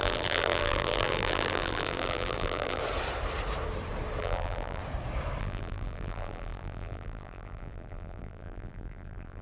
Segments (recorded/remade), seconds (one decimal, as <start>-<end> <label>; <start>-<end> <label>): 0.0-2.8 remade; 2.8-4.2 recorded; 4.2-4.8 remade; 4.8-5.4 recorded; 5.4-9.4 remade